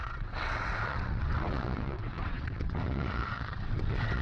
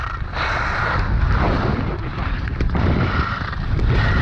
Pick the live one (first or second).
second